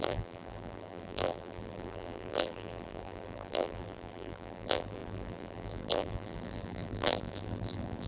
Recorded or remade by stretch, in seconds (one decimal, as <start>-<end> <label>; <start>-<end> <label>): 0.0-8.1 remade

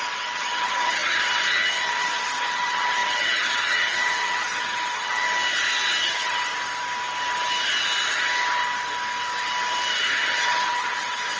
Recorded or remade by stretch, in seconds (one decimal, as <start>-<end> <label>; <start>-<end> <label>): 0.0-5.2 remade; 5.2-6.1 recorded; 6.1-6.5 remade; 6.5-10.1 recorded; 10.1-11.4 remade

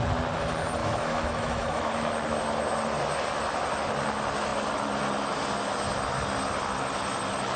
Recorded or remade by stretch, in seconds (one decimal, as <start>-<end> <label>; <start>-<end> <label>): 0.0-0.8 recorded; 0.8-1.9 remade; 1.9-7.6 recorded